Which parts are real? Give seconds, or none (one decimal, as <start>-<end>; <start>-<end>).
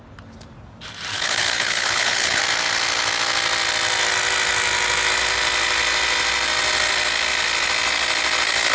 0.0-1.1; 2.4-8.7